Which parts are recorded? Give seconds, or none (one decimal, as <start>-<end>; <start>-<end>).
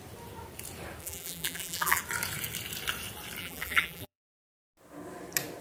0.0-1.0; 2.0-3.4; 4.2-5.6